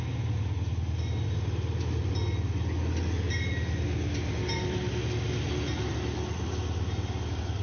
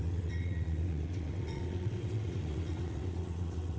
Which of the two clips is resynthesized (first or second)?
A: second